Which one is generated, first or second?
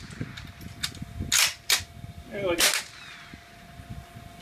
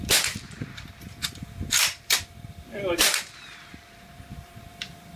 second